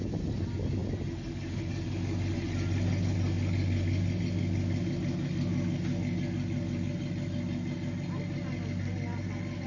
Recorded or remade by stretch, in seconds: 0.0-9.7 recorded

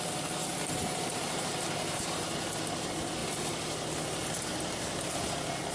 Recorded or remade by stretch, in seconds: 0.0-0.4 recorded; 0.4-1.4 remade; 1.4-5.7 recorded

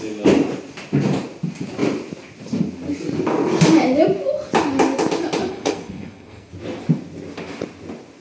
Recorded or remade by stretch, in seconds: 0.0-5.5 recorded; 5.5-6.5 remade; 6.5-8.2 recorded

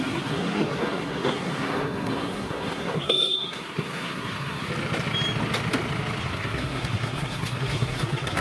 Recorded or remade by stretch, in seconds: 0.0-4.7 remade; 4.7-6.2 recorded; 6.2-8.4 remade